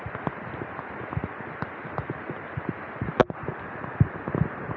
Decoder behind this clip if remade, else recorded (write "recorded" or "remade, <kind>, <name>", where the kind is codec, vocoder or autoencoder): recorded